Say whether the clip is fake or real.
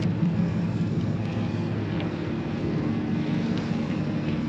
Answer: fake